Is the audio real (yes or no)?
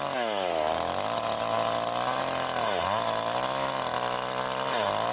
yes